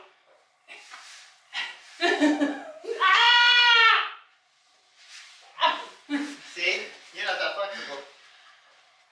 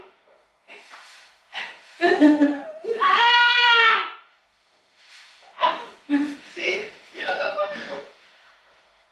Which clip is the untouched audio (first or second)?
first